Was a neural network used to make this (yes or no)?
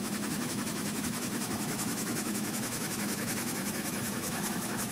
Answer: yes